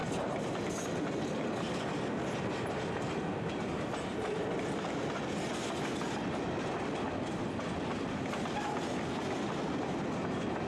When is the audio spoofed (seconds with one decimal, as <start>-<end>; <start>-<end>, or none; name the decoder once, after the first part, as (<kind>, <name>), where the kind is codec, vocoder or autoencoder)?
none